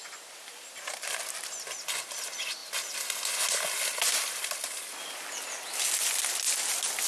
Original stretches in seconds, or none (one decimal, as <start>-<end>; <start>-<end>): 0.0-0.4; 1.2-7.1